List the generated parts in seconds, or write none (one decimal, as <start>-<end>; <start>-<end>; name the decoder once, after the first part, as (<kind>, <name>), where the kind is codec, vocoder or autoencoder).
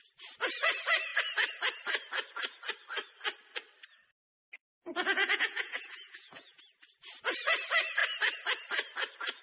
4.6-6.6 (vocoder, Vocos)